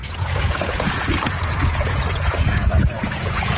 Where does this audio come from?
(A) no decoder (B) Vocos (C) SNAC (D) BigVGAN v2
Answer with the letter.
B